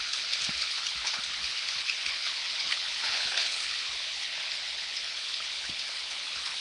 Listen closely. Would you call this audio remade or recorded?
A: remade